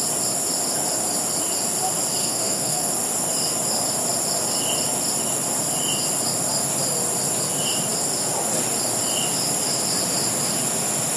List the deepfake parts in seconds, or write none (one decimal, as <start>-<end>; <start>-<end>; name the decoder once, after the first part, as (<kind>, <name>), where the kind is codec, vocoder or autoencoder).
2.2-2.9 (codec, SNAC)